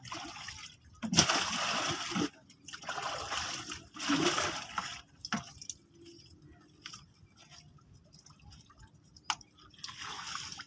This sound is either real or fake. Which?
real